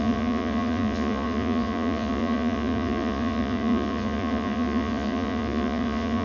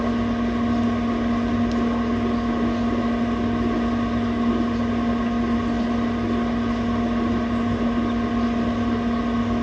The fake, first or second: first